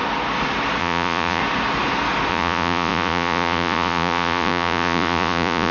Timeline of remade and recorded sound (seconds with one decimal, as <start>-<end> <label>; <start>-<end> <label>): 0.0-0.8 recorded; 0.8-1.4 remade; 1.4-2.3 recorded; 2.3-5.7 remade